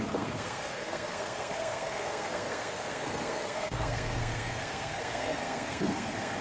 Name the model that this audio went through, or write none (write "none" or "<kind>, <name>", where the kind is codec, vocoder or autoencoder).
codec, SNAC